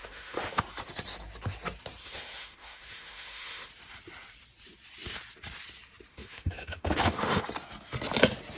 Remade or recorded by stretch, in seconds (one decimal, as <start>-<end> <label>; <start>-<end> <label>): 0.0-0.6 remade; 0.6-2.0 recorded; 2.0-3.7 remade; 3.7-6.1 recorded; 6.1-7.4 remade; 7.4-8.6 recorded